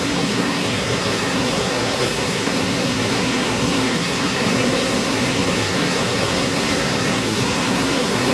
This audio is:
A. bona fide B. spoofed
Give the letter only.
B